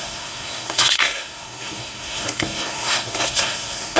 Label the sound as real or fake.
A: fake